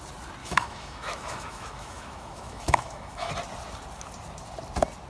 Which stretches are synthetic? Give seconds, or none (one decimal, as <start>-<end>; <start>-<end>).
0.4-3.3